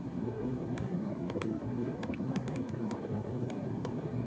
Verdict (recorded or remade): remade